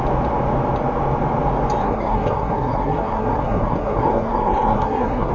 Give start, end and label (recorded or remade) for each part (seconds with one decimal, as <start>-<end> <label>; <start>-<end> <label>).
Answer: 0.0-1.8 recorded; 1.8-5.3 remade